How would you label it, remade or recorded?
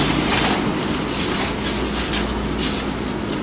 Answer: recorded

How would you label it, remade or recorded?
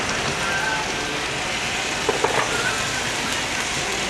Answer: recorded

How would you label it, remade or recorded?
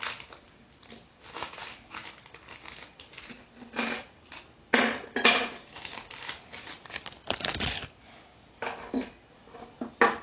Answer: recorded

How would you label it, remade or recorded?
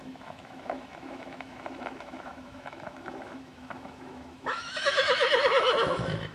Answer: remade